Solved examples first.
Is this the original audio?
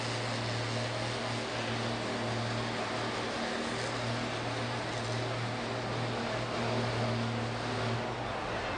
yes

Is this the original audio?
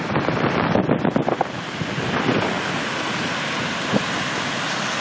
yes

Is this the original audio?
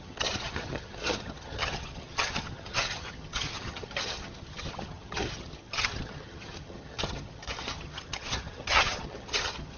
no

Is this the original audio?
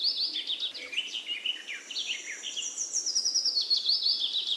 yes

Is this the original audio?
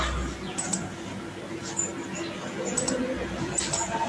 yes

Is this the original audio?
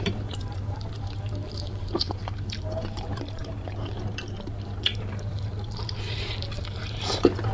no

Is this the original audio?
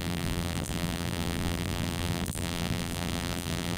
no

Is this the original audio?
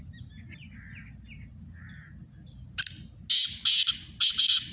yes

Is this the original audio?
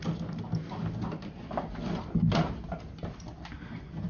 yes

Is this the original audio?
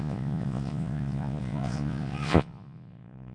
no